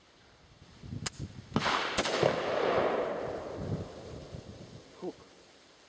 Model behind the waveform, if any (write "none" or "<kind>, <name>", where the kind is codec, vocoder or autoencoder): none